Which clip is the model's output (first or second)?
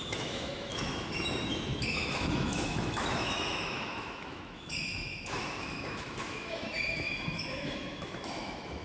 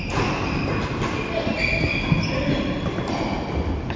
first